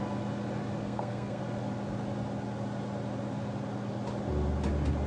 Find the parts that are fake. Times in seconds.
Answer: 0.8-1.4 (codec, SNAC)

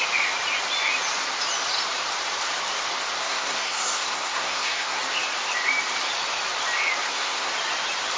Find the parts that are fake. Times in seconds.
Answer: 3.2-5.0 (codec, SNAC); 7.0-7.5

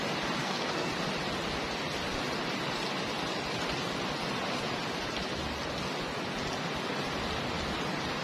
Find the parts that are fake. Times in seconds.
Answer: 0.4-0.9 (codec, SNAC)

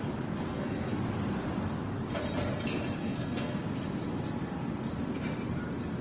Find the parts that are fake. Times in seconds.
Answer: 0.5-1.0 (codec, SNAC); 3.0-3.6

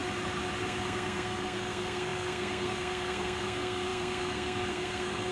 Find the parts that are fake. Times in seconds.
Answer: 0.6-5.3 (codec, SNAC)

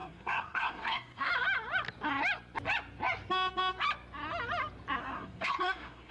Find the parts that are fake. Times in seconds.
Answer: 0.0-1.3 (codec, SNAC); 5.0-6.1

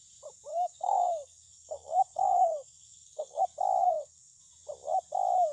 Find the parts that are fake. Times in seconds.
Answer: 0.5-3.4 (codec, SNAC); 3.8-4.4

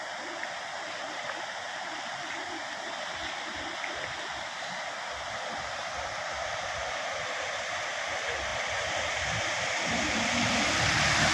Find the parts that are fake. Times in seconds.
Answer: none